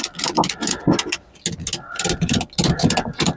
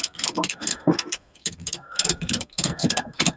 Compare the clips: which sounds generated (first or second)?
second